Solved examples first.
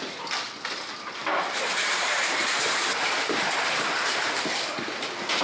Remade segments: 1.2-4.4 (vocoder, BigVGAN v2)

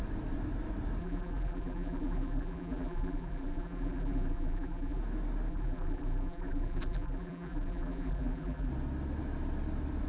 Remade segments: 1.0-5.0 (vocoder, BigVGAN v2); 5.5-8.7

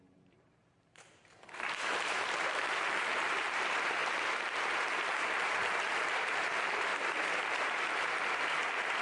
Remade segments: 0.0-6.9 (vocoder, BigVGAN v2); 7.4-9.0

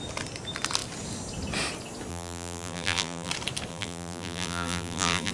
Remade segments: 2.1-3.3 (vocoder, BigVGAN v2); 3.7-5.3

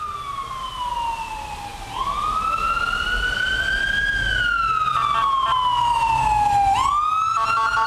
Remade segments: none